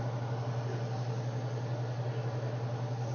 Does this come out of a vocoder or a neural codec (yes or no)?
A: no